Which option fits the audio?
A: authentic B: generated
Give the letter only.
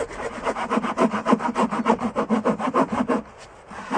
A